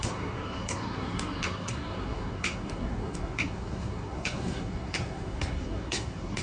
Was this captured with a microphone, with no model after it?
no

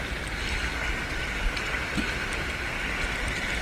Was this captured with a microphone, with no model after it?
yes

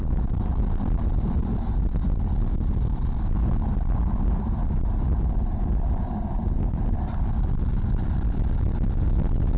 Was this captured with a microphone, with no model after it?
yes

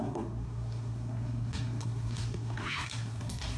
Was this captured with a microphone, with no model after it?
no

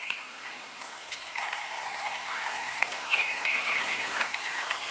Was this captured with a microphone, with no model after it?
no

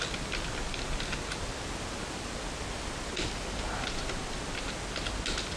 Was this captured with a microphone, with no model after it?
yes